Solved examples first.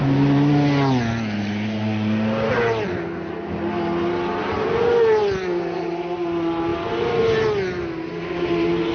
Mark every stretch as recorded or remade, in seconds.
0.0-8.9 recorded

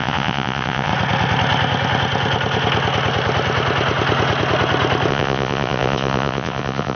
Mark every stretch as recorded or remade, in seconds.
0.0-0.9 remade; 0.9-5.1 recorded; 5.1-7.0 remade

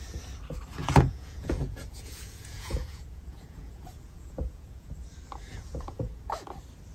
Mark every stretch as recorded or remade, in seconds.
0.0-0.8 recorded; 0.8-4.9 remade; 4.9-5.5 recorded; 5.5-6.2 remade; 6.2-6.9 recorded